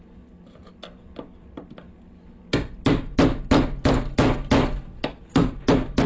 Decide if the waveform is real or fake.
real